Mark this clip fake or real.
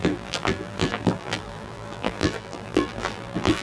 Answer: fake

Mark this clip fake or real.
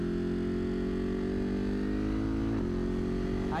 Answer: real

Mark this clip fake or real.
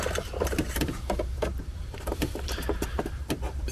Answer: fake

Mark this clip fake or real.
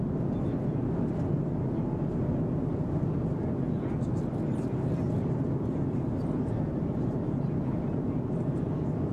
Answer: real